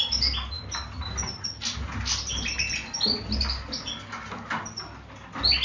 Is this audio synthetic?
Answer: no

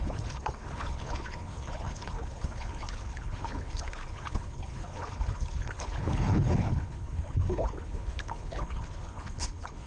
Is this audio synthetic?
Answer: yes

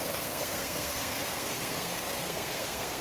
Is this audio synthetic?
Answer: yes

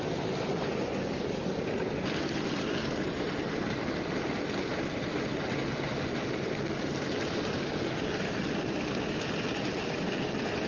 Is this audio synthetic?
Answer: no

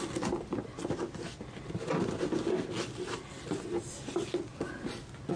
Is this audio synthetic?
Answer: no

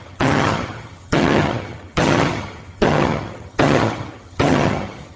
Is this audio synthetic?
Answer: yes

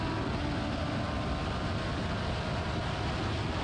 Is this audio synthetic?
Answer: no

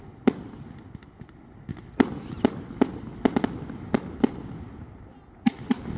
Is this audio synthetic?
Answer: no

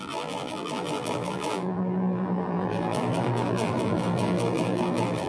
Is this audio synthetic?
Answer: yes